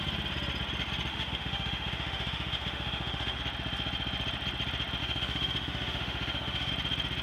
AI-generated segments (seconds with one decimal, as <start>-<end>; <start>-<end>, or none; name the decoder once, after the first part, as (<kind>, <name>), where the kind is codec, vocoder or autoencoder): 1.1-3.4 (autoencoder, DAC-VAE); 5.0-6.7